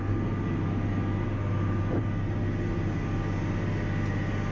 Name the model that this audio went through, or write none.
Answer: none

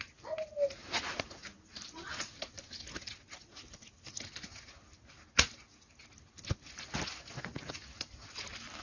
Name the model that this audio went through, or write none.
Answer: none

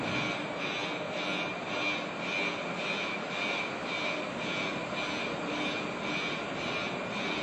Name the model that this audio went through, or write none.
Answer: none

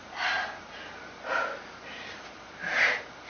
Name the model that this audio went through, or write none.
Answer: none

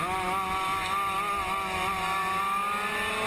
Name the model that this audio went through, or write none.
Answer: none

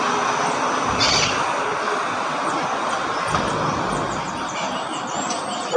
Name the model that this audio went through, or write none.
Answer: none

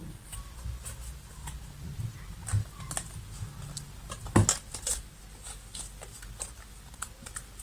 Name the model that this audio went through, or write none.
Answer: none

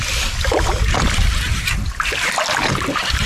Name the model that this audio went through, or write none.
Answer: none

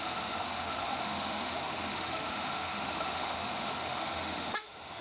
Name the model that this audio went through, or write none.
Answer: autoencoder, DAC-VAE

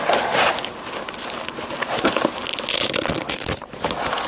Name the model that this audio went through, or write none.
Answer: none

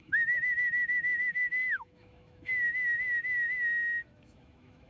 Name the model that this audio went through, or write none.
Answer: autoencoder, DAC-VAE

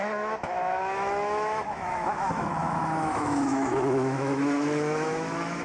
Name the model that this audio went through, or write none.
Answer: autoencoder, DAC-VAE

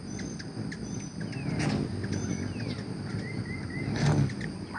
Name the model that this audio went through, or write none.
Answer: none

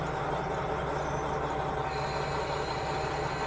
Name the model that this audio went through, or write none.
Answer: none